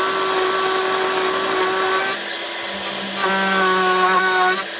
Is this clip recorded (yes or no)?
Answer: yes